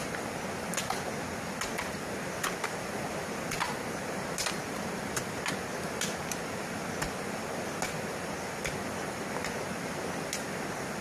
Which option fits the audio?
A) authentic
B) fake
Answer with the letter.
A